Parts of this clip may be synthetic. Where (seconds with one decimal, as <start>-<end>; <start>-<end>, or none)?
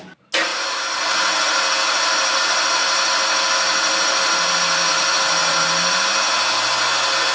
none